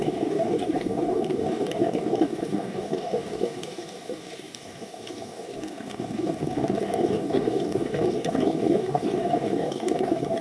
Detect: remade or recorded remade